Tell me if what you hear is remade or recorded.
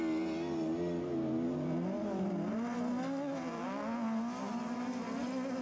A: recorded